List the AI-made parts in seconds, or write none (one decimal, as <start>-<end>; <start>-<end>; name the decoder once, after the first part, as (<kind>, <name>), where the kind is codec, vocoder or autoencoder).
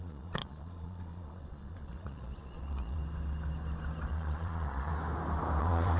0.0-3.0 (vocoder, Vocos); 4.1-4.9; 5.6-6.0